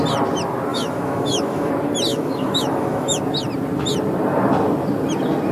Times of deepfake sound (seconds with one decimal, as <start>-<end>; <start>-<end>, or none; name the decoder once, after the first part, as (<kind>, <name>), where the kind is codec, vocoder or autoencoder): 0.7-1.7 (autoencoder, DAC-VAE); 2.1-3.2